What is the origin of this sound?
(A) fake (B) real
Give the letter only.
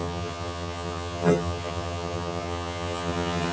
A